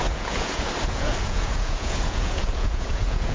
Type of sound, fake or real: fake